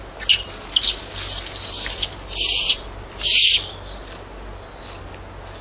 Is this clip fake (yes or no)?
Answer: no